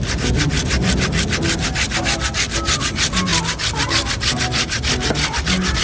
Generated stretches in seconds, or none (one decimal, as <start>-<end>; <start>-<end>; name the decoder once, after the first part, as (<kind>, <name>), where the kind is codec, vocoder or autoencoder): none